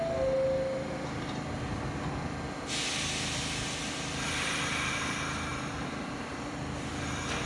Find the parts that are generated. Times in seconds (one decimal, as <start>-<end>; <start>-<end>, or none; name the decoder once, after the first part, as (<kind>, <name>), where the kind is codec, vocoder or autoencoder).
5.5-6.9 (vocoder, BigVGAN v2)